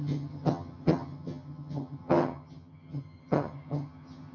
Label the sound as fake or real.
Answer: fake